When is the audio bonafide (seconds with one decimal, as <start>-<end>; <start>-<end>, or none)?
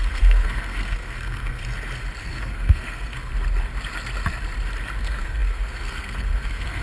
1.6-2.2; 3.3-5.0